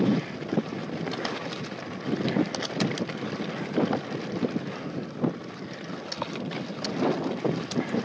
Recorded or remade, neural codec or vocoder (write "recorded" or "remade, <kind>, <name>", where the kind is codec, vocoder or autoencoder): recorded